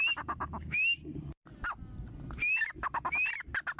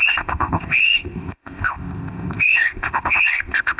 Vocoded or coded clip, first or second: second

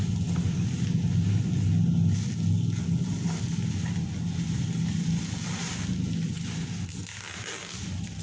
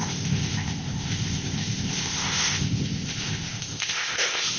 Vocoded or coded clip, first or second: second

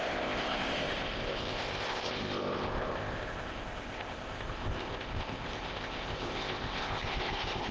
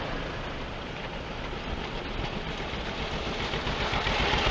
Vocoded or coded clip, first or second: first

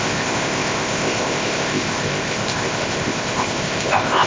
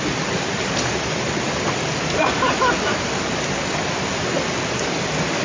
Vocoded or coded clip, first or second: first